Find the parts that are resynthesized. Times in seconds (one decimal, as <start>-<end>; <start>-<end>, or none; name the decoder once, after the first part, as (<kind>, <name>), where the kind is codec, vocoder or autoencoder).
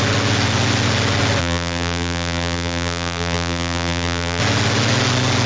1.4-4.4 (vocoder, BigVGAN v2)